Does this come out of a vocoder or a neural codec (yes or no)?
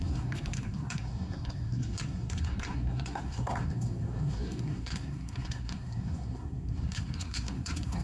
yes